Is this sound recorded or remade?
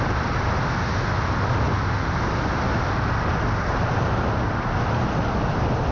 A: recorded